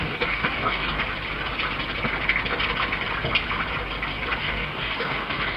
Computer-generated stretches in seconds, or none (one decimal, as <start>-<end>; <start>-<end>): 0.0-1.0; 4.4-5.6